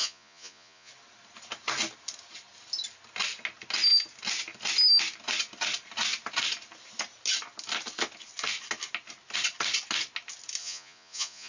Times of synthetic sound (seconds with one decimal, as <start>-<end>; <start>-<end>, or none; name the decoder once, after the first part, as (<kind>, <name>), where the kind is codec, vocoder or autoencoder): 0.0-0.9 (vocoder, Vocos); 10.6-11.5